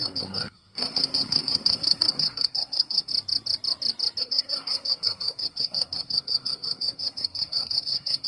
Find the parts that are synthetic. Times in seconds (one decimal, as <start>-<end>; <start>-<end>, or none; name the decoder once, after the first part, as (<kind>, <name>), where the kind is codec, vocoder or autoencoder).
0.0-3.1 (codec, SNAC); 4.2-8.3